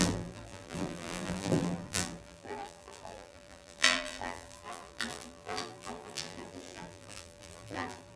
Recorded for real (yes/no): no